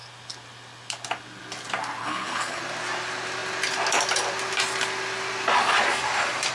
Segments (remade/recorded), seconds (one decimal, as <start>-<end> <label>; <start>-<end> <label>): 0.0-2.0 recorded; 2.0-2.6 remade; 2.6-6.5 recorded